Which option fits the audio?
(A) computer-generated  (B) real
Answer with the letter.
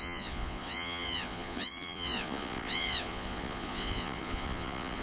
A